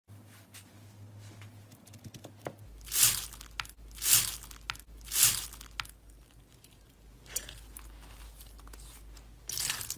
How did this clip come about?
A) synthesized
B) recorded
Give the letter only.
B